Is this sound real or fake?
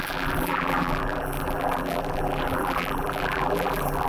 fake